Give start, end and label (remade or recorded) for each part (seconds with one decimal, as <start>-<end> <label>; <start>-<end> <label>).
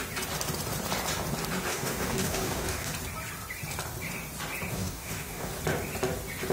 0.0-1.7 recorded; 1.7-2.9 remade; 2.9-4.7 recorded; 4.7-5.5 remade; 5.5-6.5 recorded